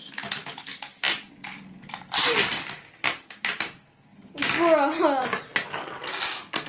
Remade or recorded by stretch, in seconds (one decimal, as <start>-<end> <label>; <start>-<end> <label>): 0.0-4.1 remade; 4.1-6.7 recorded